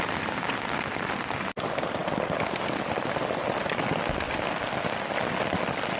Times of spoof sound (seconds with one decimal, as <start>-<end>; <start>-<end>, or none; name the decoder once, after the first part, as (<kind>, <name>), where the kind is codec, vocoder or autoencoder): none